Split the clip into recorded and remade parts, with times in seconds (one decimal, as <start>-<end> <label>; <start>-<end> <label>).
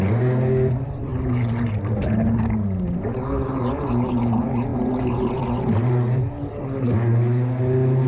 0.0-8.1 recorded